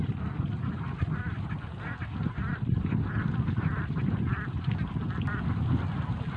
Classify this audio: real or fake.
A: real